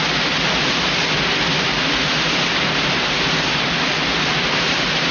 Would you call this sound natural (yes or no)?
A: yes